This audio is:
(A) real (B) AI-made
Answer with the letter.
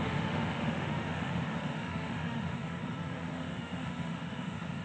B